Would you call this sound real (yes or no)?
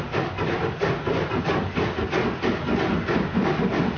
yes